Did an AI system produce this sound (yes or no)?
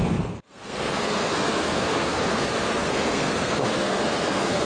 yes